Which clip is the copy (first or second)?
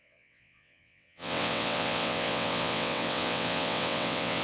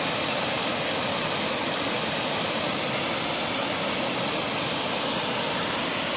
first